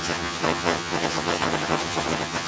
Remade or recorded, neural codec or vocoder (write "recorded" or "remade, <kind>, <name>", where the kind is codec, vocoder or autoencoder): remade, vocoder, HiFi-GAN